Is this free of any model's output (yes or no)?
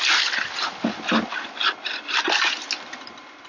yes